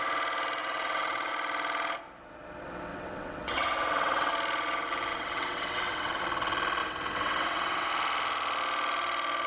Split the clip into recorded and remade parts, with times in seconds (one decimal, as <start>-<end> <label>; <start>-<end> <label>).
0.0-0.6 recorded; 0.6-1.3 remade; 1.3-2.9 recorded; 2.9-4.3 remade; 4.3-5.1 recorded; 5.1-6.2 remade; 6.2-6.8 recorded; 6.8-7.9 remade; 7.9-9.5 recorded